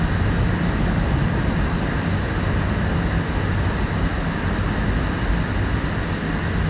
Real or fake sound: real